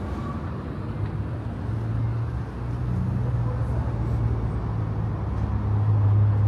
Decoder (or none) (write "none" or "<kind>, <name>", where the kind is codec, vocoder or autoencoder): none